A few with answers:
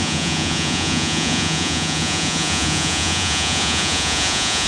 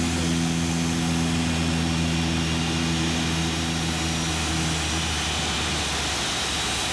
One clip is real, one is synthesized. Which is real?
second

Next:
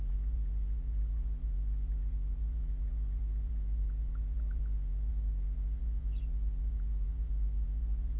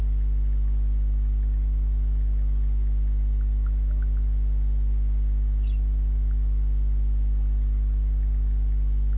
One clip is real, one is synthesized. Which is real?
second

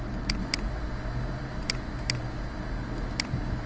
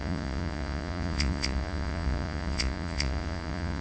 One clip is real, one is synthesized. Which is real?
first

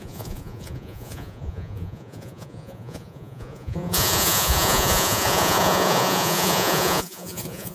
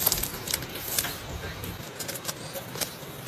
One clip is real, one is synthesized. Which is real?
second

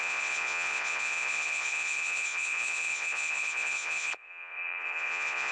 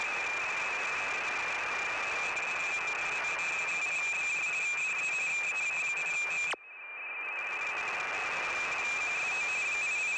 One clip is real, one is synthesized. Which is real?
second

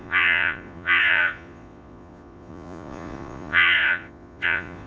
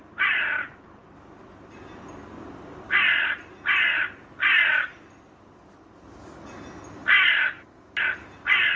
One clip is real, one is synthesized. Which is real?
second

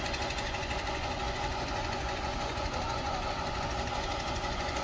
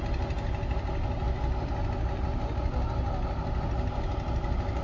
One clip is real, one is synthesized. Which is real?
second